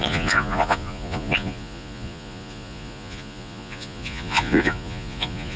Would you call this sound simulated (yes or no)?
yes